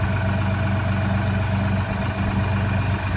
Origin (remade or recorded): recorded